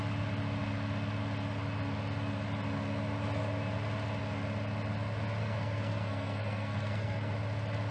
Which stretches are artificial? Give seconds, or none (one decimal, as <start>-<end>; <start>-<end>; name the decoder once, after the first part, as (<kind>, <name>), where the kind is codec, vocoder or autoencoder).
5.4-7.3 (codec, SNAC)

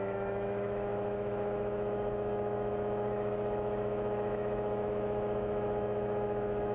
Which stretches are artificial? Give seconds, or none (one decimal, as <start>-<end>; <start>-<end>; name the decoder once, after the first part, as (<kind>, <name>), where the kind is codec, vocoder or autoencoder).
0.0-6.7 (autoencoder, DAC-VAE)

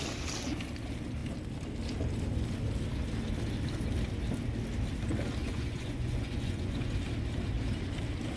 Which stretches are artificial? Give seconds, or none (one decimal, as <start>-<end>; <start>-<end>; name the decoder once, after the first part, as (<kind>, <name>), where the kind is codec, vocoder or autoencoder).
5.4-6.9 (vocoder, Vocos)

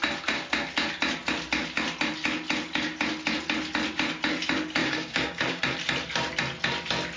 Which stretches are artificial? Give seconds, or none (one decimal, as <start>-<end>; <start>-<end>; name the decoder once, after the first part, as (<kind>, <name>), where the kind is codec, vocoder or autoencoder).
4.8-5.6 (codec, DAC)

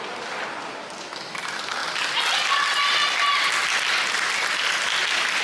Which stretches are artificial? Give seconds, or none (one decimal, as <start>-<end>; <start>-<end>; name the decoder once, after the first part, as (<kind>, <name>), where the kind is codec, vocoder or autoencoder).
none